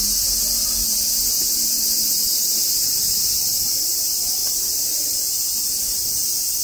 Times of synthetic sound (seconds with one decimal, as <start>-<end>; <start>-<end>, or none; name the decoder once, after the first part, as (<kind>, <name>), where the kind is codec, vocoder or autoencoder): 2.5-3.7 (vocoder, BigVGAN v2)